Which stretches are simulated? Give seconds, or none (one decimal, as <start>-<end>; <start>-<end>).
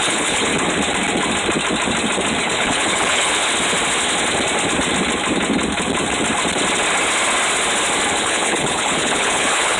0.0-0.5; 2.4-3.4; 8.2-9.8